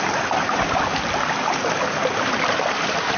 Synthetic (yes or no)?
no